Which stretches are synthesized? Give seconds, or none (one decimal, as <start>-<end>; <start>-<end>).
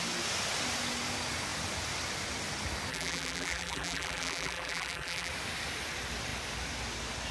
2.9-5.3